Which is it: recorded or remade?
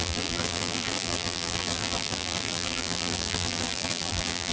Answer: remade